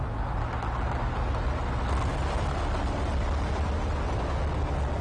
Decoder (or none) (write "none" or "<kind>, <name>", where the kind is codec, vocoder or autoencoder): none